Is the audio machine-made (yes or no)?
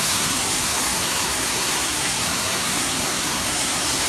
yes